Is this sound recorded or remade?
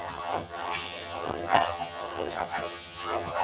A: remade